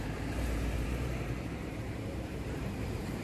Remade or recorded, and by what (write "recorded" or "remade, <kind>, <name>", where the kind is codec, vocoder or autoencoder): remade, vocoder, BigVGAN v2